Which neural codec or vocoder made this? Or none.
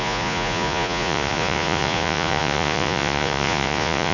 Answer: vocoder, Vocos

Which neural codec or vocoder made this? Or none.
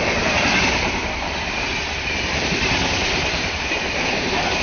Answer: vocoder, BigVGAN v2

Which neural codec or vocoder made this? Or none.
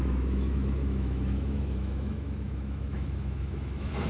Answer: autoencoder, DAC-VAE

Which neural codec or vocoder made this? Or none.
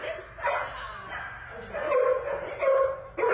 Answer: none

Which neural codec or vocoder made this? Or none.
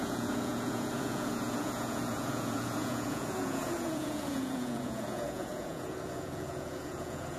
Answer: vocoder, Vocos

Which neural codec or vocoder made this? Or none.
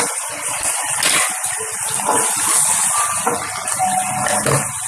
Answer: none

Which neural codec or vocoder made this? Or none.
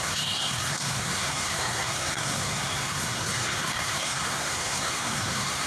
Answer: codec, SNAC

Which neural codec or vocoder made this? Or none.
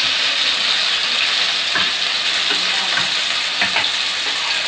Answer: none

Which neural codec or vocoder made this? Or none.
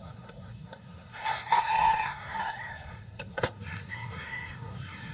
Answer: codec, SNAC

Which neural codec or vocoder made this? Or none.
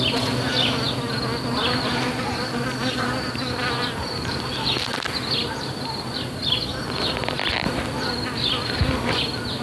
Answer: none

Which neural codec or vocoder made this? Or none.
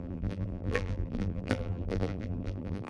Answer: vocoder, BigVGAN v2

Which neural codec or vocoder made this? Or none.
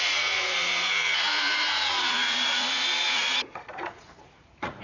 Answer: vocoder, Vocos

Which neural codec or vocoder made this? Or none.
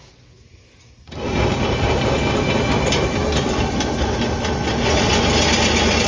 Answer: none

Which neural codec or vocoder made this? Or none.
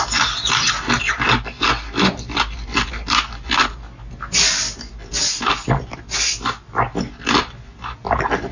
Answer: none